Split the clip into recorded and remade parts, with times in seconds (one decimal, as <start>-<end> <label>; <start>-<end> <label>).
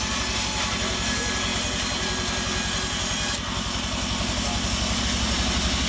0.0-5.9 recorded